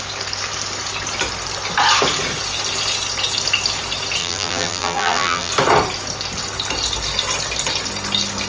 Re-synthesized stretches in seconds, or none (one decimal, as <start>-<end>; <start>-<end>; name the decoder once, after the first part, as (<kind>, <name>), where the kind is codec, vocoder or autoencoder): 4.2-5.5 (vocoder, BigVGAN v2)